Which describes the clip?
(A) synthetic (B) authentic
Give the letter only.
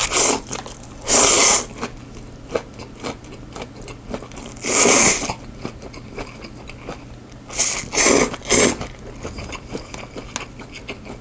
B